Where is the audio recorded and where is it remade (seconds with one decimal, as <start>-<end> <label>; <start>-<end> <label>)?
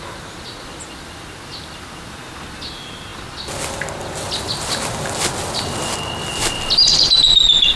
0.0-7.8 recorded